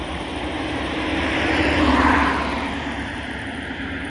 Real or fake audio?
fake